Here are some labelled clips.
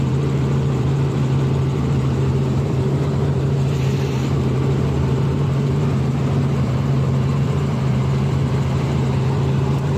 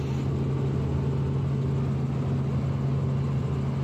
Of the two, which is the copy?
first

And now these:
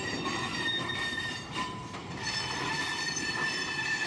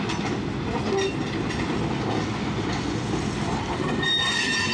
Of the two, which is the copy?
first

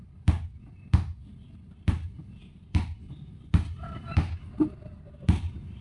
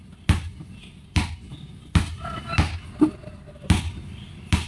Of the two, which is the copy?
first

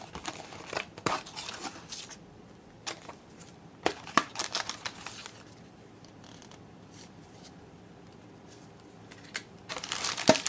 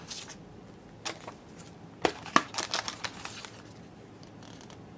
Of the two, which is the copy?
first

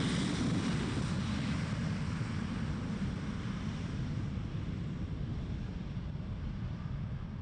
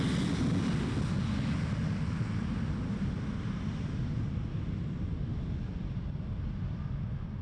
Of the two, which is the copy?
first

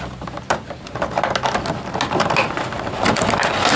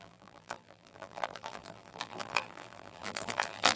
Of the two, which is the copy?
second